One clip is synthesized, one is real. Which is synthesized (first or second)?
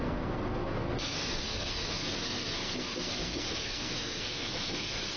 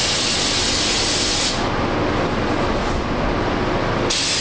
first